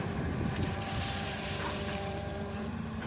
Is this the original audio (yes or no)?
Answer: no